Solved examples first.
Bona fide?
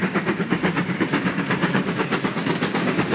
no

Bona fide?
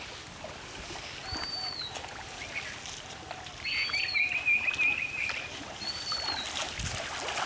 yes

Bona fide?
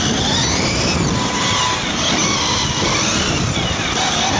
yes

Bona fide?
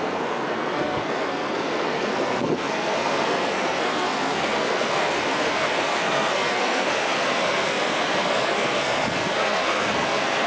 no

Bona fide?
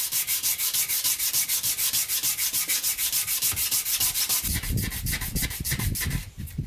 yes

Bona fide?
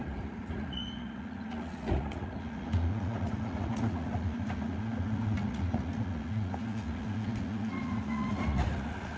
no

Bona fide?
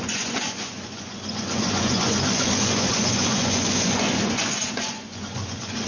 no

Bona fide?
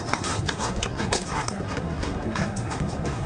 no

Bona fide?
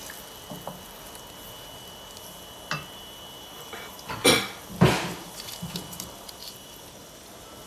yes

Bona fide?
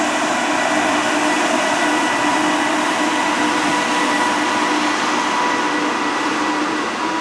yes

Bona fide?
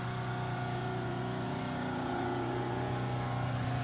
no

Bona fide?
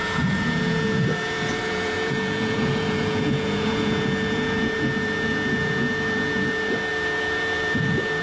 no